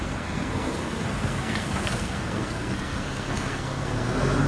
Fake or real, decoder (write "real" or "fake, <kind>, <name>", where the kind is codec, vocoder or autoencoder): fake, codec, SNAC